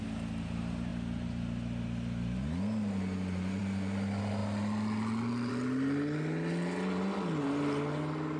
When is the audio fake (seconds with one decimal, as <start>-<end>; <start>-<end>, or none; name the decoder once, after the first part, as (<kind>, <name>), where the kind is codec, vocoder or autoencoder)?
none